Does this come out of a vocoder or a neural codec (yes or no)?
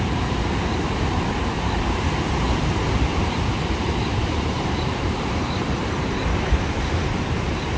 yes